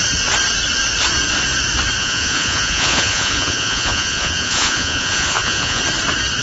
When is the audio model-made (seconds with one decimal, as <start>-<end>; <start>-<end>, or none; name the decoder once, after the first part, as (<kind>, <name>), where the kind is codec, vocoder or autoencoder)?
2.0-5.8 (vocoder, Vocos)